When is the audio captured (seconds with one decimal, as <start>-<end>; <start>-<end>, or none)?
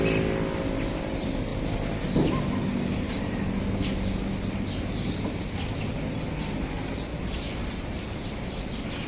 0.0-9.1